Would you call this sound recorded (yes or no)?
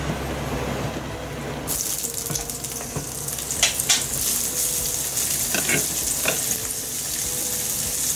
yes